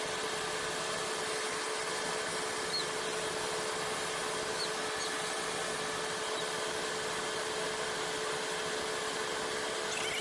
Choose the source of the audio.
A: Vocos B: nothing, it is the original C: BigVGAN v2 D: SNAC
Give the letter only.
B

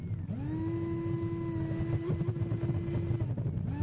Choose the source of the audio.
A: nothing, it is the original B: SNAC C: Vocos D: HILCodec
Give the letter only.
A